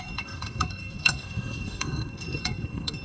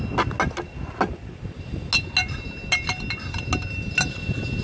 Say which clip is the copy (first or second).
first